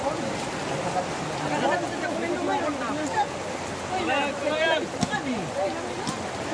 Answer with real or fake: real